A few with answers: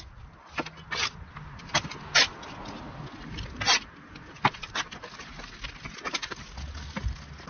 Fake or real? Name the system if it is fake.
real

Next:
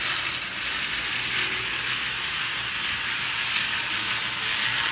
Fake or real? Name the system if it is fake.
real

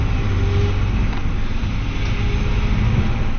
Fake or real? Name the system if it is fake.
real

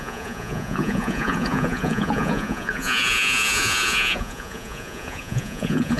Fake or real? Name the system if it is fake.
fake, vocoder, Vocos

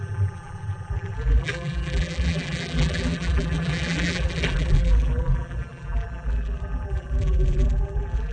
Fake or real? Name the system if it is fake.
fake, vocoder, BigVGAN v2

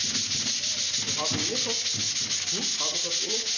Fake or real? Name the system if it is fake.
real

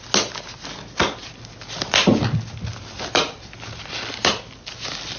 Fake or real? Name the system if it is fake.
real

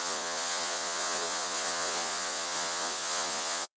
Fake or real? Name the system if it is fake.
fake, vocoder, Vocos